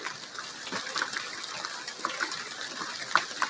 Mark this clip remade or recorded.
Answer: recorded